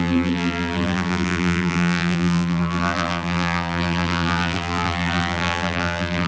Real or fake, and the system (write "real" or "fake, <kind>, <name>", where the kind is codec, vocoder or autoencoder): fake, vocoder, BigVGAN v2